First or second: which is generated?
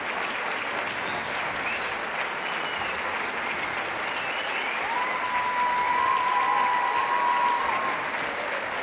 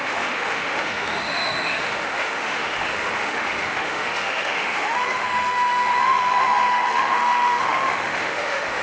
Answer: second